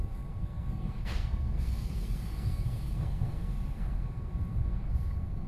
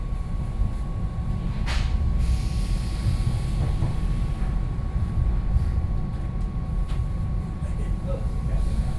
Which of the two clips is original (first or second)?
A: second